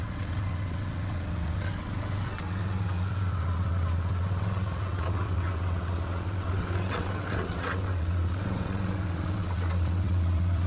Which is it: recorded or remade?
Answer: remade